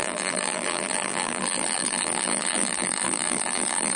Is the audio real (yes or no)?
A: no